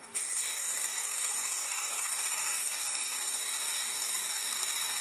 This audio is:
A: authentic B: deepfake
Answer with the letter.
B